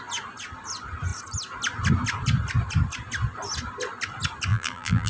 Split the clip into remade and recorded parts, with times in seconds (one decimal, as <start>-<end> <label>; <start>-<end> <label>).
0.0-4.5 recorded; 4.5-5.1 remade